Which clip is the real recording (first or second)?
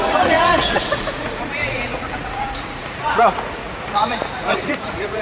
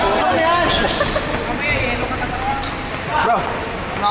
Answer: second